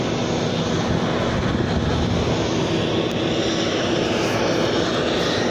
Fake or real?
real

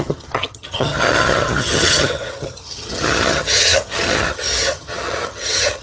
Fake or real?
fake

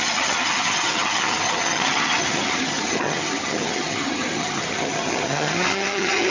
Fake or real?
fake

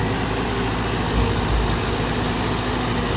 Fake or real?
real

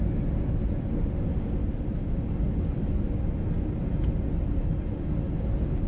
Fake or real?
real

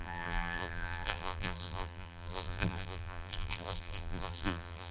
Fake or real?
fake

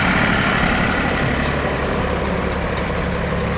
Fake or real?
fake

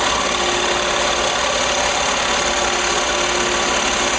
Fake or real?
real